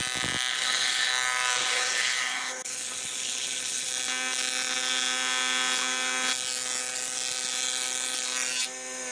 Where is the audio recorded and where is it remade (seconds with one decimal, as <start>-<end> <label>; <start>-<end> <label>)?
0.0-0.5 recorded; 0.5-1.1 remade; 1.1-1.6 recorded; 1.6-3.9 remade; 3.9-9.1 recorded